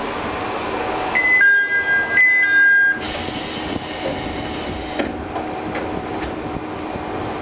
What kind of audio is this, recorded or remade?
recorded